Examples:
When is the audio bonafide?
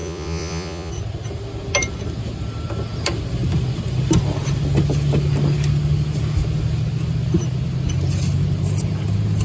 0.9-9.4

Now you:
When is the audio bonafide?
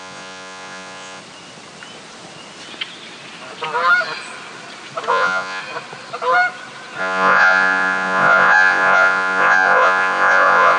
1.2-5.1; 5.6-7.0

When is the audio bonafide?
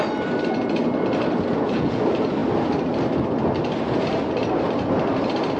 0.0-1.5; 2.0-5.6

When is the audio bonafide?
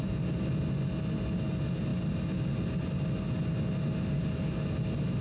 0.0-5.2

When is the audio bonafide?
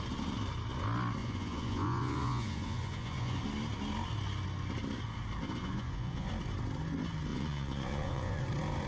0.0-1.2; 3.4-5.6; 6.3-7.3; 8.4-8.9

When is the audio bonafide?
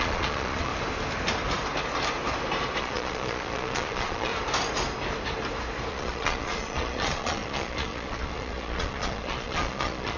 0.7-2.8; 4.3-5.9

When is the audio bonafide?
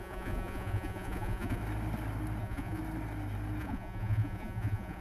1.6-2.4; 2.8-3.6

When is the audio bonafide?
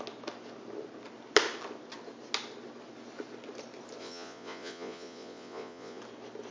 0.0-4.0; 6.0-6.5